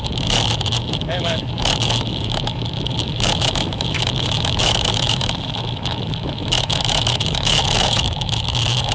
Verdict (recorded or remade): remade